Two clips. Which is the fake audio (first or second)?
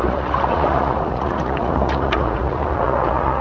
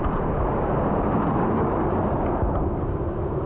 first